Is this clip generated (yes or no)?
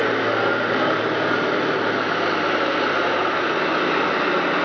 no